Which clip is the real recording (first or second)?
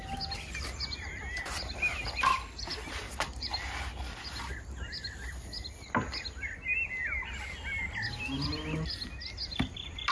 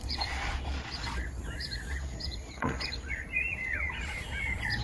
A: first